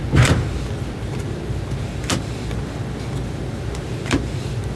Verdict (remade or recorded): recorded